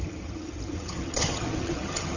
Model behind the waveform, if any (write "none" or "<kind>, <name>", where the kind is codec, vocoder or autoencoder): vocoder, HiFi-GAN